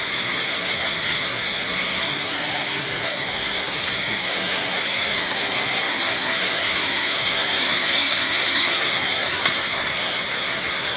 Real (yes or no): no